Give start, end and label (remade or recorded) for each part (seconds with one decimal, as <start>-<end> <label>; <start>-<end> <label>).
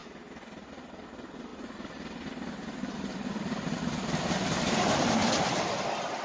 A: 0.0-1.0 recorded; 1.0-5.2 remade; 5.2-5.7 recorded; 5.7-6.2 remade